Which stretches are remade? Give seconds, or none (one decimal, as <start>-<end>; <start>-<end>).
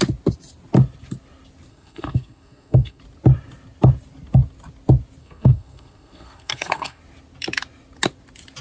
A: 1.7-3.0; 5.2-7.0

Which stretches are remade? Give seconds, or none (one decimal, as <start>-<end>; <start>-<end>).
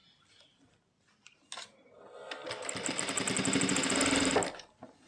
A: none